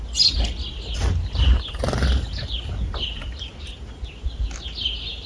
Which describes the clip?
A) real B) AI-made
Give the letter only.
A